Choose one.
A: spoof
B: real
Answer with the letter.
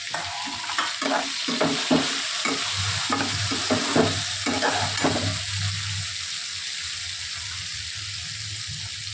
B